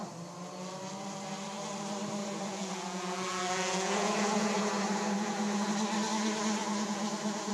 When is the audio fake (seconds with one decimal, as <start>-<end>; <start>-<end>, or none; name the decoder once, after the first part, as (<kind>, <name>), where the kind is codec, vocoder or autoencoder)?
2.2-5.7 (vocoder, Vocos); 6.6-7.5